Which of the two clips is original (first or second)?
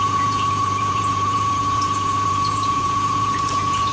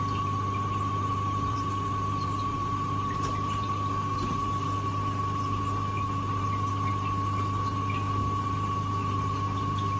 second